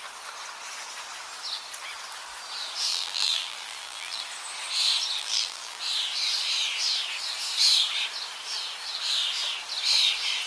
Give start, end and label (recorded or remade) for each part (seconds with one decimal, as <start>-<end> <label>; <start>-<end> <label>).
0.0-2.9 recorded; 2.9-4.2 remade; 4.2-5.2 recorded; 5.2-5.8 remade; 5.8-10.5 recorded